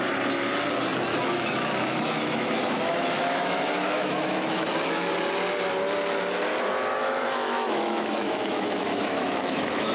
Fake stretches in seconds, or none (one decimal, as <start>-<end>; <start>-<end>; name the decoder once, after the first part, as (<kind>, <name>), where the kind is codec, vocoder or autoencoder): 1.1-5.1 (autoencoder, DAC-VAE); 7.0-9.9

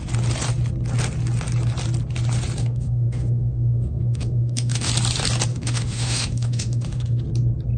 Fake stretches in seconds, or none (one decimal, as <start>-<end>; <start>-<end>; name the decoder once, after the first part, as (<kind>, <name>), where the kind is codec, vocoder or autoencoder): 2.6-4.9 (autoencoder, DAC-VAE); 5.5-7.2

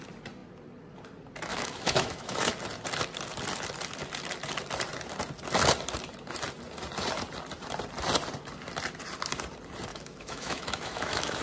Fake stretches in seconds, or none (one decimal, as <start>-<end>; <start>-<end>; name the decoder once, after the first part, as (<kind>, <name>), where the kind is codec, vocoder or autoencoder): 1.5-2.5 (autoencoder, DAC-VAE); 9.9-11.4

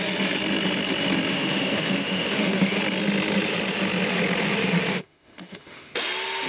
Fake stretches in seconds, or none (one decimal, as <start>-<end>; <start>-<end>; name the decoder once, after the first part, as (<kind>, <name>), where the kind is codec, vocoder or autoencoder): 1.3-2.8 (autoencoder, DAC-VAE); 4.9-5.9